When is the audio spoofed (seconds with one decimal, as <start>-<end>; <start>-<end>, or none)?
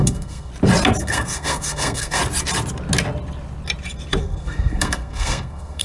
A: 0.0-0.5; 1.0-2.2; 4.2-5.8